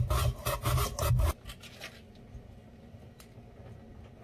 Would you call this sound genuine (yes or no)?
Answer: yes